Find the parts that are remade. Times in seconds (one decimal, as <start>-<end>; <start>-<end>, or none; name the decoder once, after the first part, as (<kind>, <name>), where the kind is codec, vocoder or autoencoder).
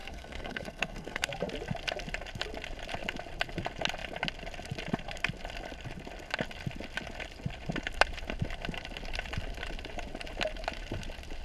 0.0-1.3 (codec, SNAC)